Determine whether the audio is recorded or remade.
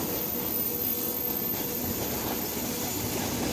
recorded